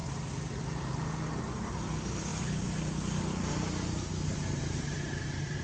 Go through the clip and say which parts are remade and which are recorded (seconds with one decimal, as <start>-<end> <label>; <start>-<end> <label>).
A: 0.0-5.6 recorded